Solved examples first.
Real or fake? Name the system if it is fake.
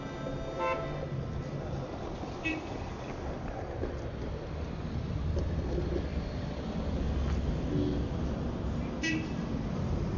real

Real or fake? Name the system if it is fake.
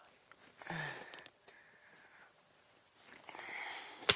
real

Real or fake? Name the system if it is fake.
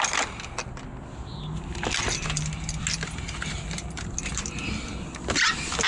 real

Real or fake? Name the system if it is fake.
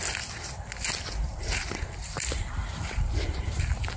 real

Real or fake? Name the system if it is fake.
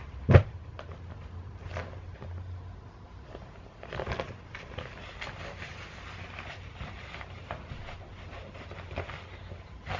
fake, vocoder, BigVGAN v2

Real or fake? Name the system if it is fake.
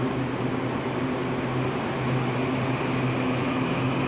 real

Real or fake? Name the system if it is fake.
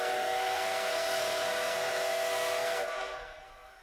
fake, codec, SNAC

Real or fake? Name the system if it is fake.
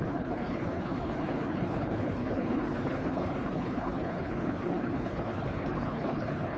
fake, codec, HILCodec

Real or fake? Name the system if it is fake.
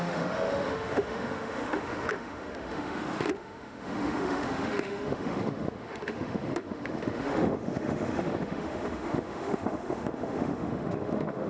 fake, autoencoder, DAC-VAE